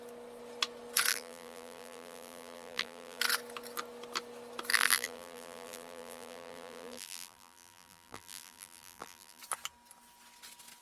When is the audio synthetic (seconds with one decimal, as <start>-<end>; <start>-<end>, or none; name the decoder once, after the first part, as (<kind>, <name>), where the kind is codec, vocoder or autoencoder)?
1.1-3.2 (vocoder, BigVGAN v2); 4.7-9.4